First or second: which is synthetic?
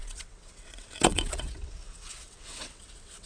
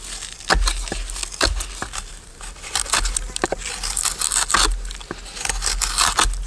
first